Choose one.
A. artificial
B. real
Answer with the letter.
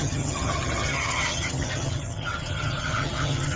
A